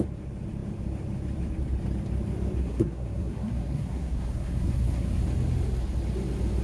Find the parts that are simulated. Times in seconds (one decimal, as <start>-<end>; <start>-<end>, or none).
2.6-5.2